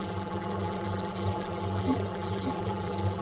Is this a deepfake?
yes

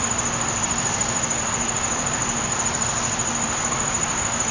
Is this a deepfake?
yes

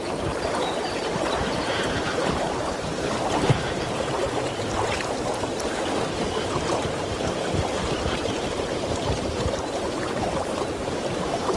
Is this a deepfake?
yes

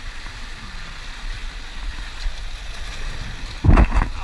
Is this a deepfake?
no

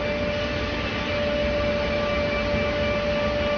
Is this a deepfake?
no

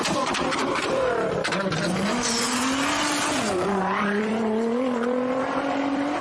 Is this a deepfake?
yes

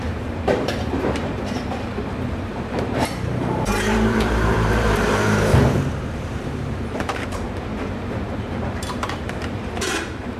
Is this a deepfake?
yes